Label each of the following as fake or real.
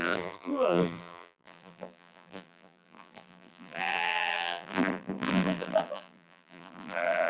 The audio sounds fake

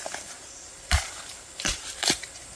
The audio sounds fake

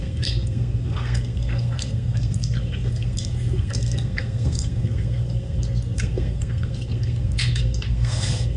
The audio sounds fake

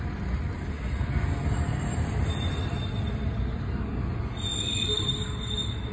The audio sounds real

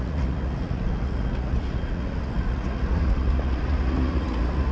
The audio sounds fake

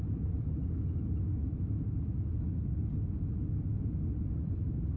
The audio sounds real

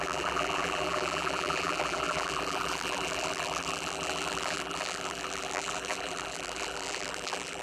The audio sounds fake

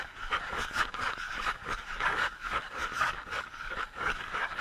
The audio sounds fake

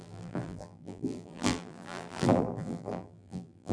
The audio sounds fake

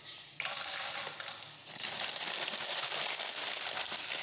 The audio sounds real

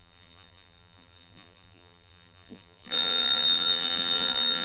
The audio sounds fake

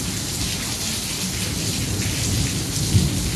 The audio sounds real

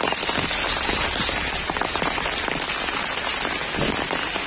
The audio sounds real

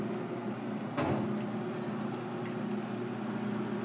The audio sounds real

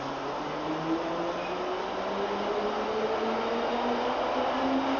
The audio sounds real